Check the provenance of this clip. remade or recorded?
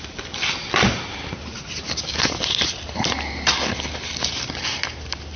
recorded